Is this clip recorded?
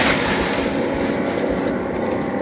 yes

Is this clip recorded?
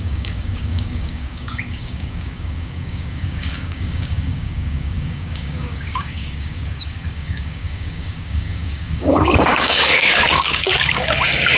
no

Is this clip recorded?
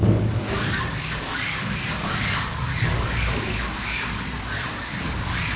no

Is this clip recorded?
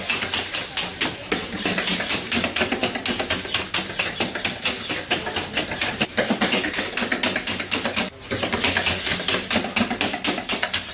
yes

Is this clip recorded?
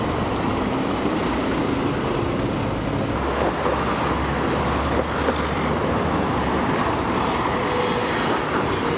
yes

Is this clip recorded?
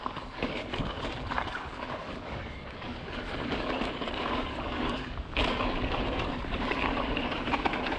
no